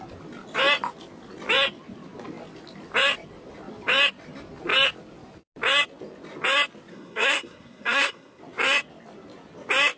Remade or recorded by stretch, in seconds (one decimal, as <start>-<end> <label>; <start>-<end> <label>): 0.0-6.9 recorded; 6.9-8.4 remade; 8.4-10.0 recorded